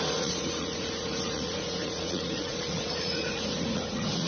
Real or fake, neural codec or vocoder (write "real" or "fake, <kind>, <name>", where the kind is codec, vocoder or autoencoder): fake, vocoder, Vocos